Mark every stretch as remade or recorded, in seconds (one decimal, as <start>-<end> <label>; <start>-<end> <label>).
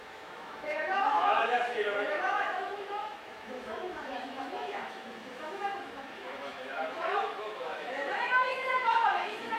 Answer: 0.0-9.6 remade